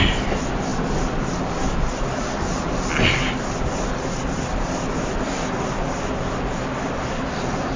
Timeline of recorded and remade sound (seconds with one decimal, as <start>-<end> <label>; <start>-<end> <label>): 0.0-7.8 recorded

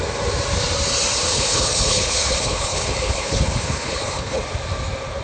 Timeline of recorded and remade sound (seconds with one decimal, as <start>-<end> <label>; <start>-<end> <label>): 0.0-1.3 recorded; 1.3-4.4 remade; 4.4-5.2 recorded

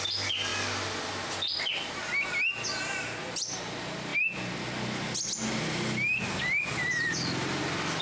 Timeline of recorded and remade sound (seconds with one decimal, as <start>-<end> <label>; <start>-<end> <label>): 0.0-8.0 recorded

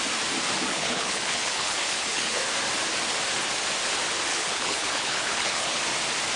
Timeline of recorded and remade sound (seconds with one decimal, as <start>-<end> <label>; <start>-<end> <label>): 0.0-0.7 recorded; 0.7-2.4 remade; 2.4-4.3 recorded; 4.3-5.8 remade; 5.8-6.4 recorded